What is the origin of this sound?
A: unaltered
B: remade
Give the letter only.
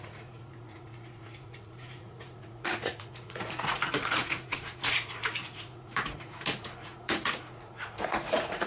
B